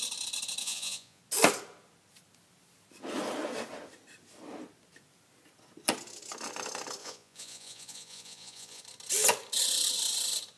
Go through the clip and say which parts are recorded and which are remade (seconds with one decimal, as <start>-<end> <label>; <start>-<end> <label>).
0.0-0.6 recorded; 0.6-1.2 remade; 1.2-7.0 recorded; 7.0-8.8 remade; 8.8-10.6 recorded